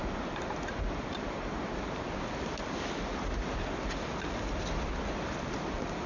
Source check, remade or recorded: recorded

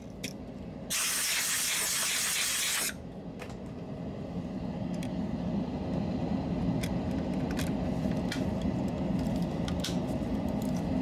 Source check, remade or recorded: recorded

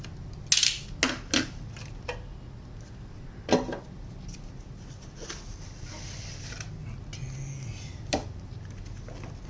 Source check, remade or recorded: recorded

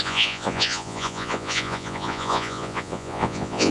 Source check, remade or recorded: remade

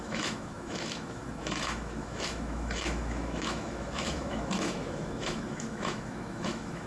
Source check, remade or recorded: remade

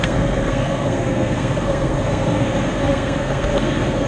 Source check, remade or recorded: remade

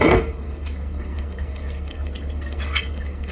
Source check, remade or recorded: remade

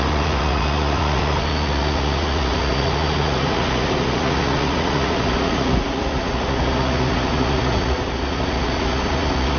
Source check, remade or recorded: remade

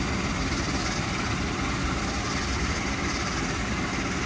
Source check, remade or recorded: recorded